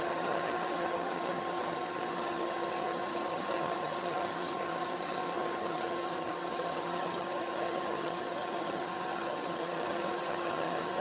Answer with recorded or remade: remade